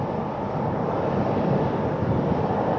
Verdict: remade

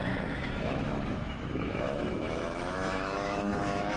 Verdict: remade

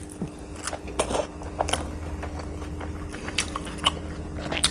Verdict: recorded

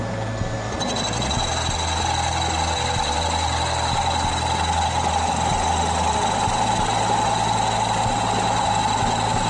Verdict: recorded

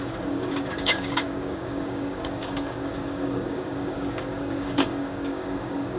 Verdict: remade